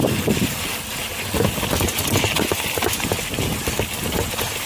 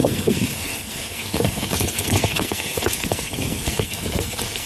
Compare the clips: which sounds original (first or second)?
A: first